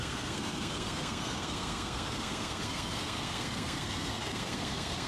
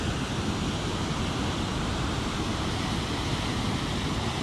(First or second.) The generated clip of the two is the first